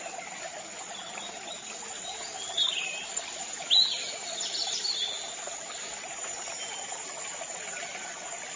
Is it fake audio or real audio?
real